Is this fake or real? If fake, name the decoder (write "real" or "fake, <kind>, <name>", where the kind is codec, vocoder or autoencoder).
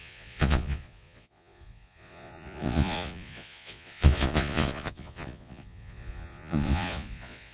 fake, vocoder, Vocos